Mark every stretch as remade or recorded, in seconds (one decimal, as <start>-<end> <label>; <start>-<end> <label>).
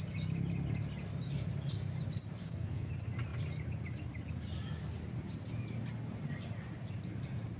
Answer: 0.0-2.4 recorded; 2.4-2.9 remade; 2.9-7.6 recorded